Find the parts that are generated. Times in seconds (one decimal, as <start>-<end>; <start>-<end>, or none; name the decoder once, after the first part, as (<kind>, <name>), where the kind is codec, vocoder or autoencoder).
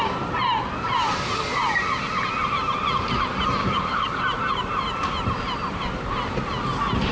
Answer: 3.6-4.2 (codec, DAC)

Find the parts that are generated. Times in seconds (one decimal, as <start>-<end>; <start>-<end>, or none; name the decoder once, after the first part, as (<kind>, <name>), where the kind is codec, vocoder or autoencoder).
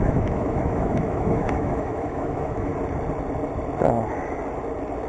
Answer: 0.0-2.7 (autoencoder, DAC-VAE)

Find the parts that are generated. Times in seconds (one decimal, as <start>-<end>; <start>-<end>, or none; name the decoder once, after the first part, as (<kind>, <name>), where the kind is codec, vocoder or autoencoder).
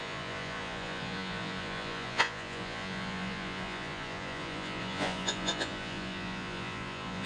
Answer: 0.0-7.3 (vocoder, Vocos)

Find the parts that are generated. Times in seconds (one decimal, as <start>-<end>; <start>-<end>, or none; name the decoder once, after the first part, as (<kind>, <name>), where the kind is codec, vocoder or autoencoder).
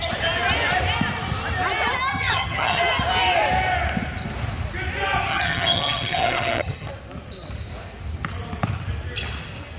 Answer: 2.1-2.8 (vocoder, HiFi-GAN); 5.3-6.9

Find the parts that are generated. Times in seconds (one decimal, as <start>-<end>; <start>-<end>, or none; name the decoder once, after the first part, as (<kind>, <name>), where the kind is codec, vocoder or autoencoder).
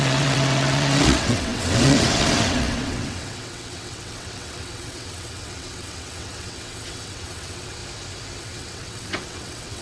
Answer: 0.0-7.8 (vocoder, WaveNeXt); 8.4-9.8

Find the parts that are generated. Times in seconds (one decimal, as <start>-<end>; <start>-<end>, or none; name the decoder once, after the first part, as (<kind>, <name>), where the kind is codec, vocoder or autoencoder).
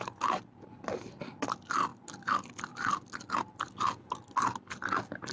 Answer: none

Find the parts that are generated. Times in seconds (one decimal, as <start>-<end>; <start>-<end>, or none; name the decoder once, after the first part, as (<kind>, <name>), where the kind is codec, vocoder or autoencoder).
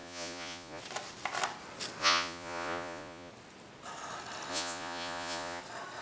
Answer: 0.0-0.8 (vocoder, Vocos); 2.0-3.3; 4.5-5.6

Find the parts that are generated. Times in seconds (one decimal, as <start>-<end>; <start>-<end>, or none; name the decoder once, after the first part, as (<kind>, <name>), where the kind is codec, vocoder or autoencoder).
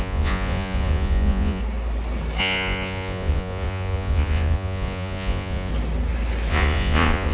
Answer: 0.0-1.6 (vocoder, Vocos); 2.4-5.7; 6.5-7.3